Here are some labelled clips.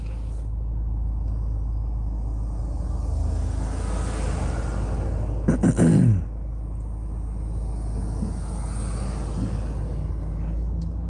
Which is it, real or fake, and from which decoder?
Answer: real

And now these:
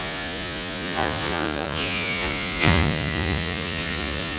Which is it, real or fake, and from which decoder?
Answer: fake, vocoder, Vocos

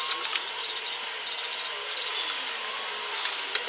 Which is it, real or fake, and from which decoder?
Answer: real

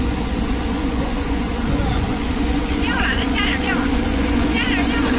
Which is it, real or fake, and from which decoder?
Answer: fake, vocoder, Vocos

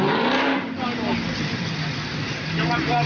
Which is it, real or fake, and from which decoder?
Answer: real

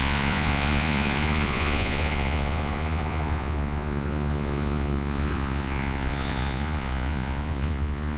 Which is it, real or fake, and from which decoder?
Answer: fake, vocoder, Vocos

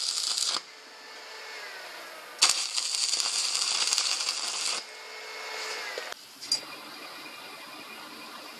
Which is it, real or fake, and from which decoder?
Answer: real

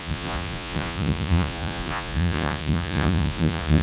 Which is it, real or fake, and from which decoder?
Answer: fake, vocoder, Vocos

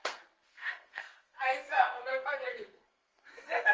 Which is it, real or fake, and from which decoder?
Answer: fake, codec, SNAC